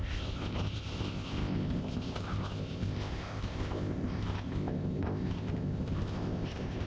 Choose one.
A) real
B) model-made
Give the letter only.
B